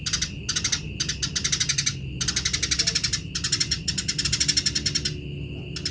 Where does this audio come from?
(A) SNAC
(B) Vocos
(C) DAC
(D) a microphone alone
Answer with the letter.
D